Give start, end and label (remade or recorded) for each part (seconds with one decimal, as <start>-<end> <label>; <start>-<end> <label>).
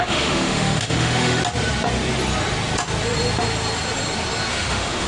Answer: 0.0-1.4 remade; 1.4-4.5 recorded; 4.5-5.1 remade